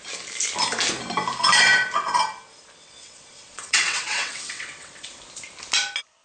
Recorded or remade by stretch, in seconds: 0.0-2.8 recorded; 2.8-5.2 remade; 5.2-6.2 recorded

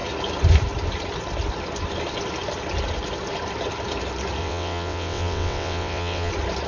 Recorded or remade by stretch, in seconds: 0.0-4.4 recorded; 4.4-6.3 remade; 6.3-6.7 recorded

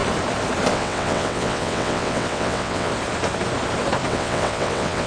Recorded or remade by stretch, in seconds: 0.0-0.7 recorded; 0.7-2.9 remade; 2.9-4.1 recorded; 4.1-5.1 remade

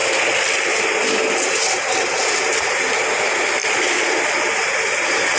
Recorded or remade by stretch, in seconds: 0.0-5.4 recorded

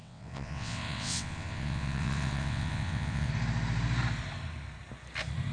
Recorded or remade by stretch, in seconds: 0.0-3.3 remade; 3.3-5.5 recorded

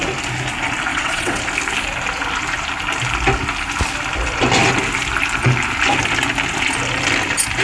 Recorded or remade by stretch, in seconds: 0.0-0.9 recorded; 0.9-1.4 remade; 1.4-7.6 recorded

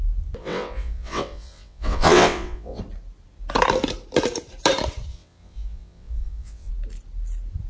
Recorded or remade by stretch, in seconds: 0.0-0.4 recorded; 0.4-2.8 remade; 2.8-5.1 recorded; 5.1-6.7 remade; 6.7-7.7 recorded